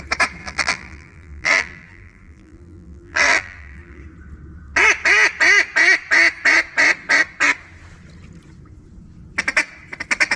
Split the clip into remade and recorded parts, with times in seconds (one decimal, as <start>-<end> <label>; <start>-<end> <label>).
0.0-0.4 recorded; 0.4-4.0 remade; 4.0-10.4 recorded